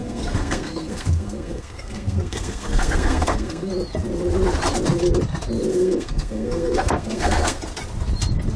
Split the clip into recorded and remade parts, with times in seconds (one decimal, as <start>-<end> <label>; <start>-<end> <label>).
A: 0.0-3.7 remade; 3.7-5.7 recorded; 5.7-7.6 remade; 7.6-8.6 recorded